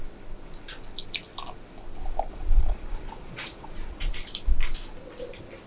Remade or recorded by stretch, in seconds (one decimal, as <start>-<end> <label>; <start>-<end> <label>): 0.0-2.3 recorded; 2.3-4.1 remade; 4.1-5.7 recorded